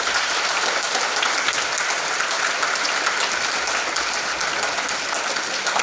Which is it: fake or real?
real